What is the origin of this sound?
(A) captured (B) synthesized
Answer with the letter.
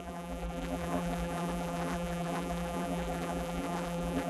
B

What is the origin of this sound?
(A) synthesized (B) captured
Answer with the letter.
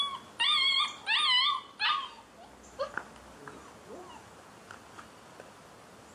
B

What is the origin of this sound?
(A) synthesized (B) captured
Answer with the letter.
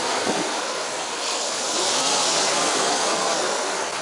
A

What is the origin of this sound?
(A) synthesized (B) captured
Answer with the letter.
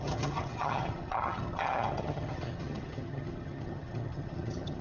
A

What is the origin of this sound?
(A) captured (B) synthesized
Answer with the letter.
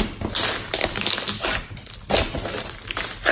A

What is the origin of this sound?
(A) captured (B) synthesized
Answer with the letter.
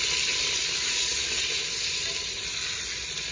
A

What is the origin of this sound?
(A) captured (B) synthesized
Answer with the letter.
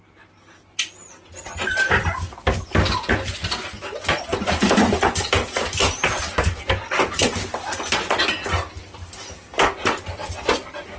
A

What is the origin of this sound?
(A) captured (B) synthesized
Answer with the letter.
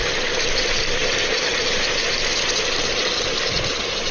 A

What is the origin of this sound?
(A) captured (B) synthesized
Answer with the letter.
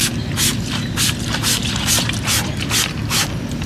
A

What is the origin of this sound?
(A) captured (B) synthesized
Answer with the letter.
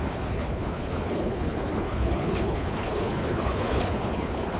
B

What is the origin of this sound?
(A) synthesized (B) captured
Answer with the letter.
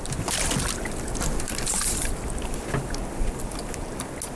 B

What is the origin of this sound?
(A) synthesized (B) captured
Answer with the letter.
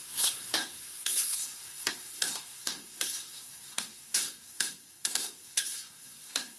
A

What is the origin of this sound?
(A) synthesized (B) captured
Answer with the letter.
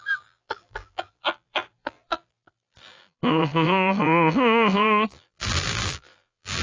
A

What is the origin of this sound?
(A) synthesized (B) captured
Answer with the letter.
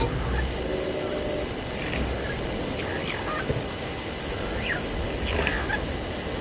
B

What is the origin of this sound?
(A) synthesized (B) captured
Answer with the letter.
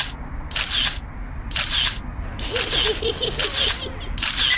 B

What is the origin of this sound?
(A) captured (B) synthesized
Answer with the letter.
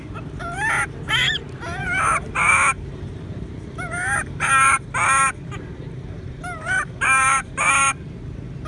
B